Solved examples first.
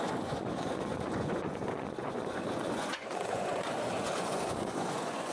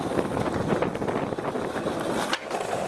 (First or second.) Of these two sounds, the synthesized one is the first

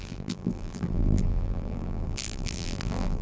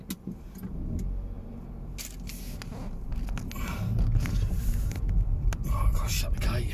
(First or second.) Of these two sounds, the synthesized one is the first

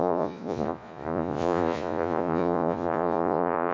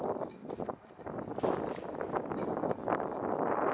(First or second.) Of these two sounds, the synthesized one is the first